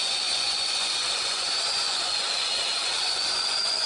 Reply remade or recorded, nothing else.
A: remade